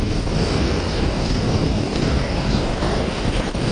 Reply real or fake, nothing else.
fake